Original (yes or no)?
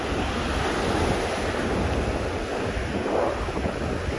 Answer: yes